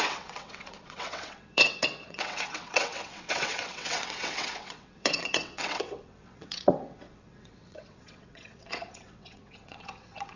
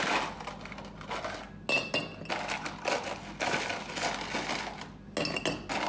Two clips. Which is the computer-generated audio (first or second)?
first